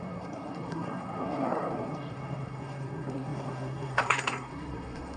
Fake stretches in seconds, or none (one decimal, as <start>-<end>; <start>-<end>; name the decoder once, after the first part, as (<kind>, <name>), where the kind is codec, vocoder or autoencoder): 0.0-5.2 (codec, SNAC)